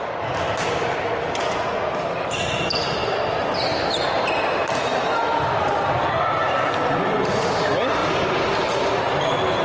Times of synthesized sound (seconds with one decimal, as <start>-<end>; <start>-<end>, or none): none